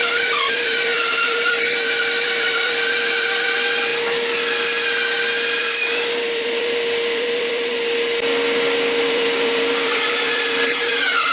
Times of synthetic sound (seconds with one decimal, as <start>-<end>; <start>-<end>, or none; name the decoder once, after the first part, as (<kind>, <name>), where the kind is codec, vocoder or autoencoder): 0.0-3.9 (vocoder, BigVGAN v2); 5.6-7.7; 9.0-11.3